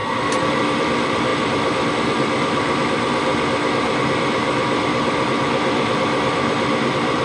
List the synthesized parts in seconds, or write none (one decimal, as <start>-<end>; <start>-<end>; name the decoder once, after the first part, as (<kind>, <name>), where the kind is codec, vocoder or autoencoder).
0.0-3.3 (vocoder, BigVGAN v2); 4.0-7.2

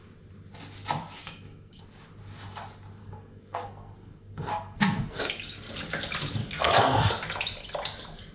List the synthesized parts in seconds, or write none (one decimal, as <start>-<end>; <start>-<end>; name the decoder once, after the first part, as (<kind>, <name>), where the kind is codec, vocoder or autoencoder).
1.2-1.8 (codec, SNAC); 3.0-5.2; 6.4-7.1

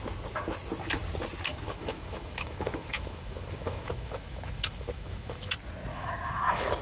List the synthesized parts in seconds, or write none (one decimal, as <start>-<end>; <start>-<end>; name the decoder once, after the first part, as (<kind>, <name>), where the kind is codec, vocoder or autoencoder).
1.5-5.5 (autoencoder, DAC-VAE); 5.9-6.8